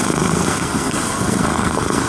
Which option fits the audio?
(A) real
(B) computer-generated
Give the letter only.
B